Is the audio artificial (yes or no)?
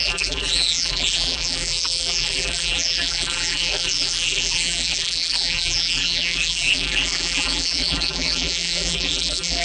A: yes